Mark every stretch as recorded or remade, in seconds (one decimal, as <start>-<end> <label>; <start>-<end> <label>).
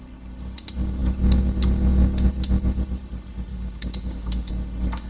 0.0-3.5 recorded; 3.5-4.5 remade; 4.5-5.1 recorded